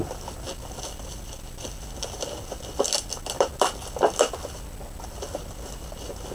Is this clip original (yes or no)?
yes